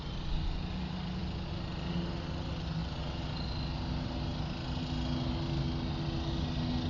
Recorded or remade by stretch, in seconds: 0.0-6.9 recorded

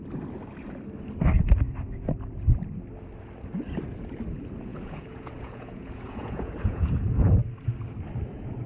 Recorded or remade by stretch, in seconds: 0.0-4.7 recorded; 4.7-7.4 remade; 7.4-8.7 recorded

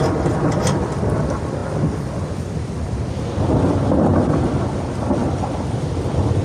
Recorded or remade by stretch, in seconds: 0.0-6.4 recorded

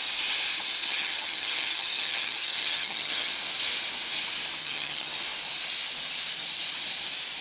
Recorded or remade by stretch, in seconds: 0.0-0.8 recorded; 0.8-3.3 remade; 3.3-4.6 recorded; 4.6-5.1 remade; 5.1-7.4 recorded